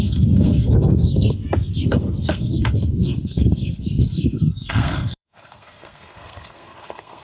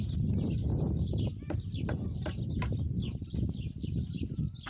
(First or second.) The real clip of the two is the second